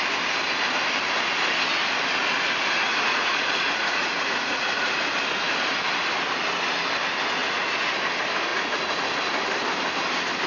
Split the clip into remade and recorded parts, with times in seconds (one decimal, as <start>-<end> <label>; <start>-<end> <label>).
0.0-2.9 recorded; 2.9-5.0 remade; 5.0-8.5 recorded; 8.5-9.1 remade; 9.1-10.5 recorded